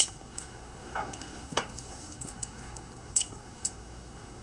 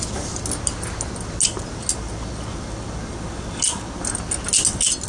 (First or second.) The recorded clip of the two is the second